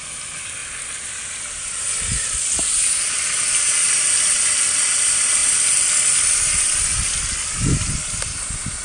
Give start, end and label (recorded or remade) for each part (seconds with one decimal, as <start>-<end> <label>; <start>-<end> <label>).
0.0-8.8 recorded